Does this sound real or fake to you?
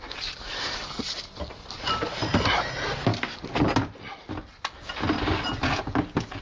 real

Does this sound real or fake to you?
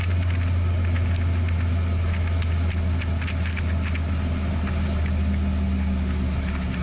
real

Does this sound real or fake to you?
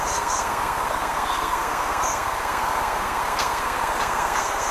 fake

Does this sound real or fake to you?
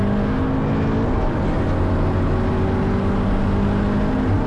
real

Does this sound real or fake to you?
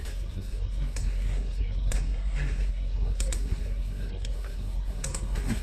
fake